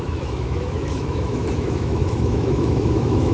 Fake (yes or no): yes